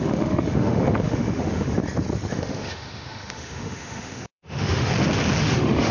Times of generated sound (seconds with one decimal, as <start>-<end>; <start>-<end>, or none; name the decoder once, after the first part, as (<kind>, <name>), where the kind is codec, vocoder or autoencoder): 0.0-1.8 (autoencoder, DAC-VAE); 2.3-4.9; 5.4-5.9